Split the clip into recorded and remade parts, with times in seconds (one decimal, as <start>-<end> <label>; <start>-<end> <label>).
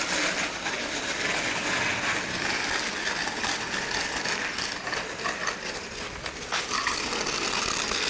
0.0-8.1 recorded